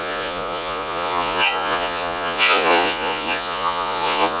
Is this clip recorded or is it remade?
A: remade